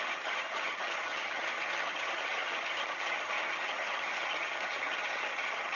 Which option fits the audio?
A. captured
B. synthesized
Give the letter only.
B